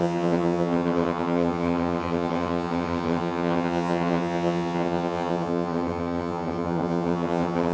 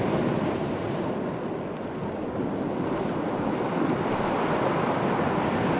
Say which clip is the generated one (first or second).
first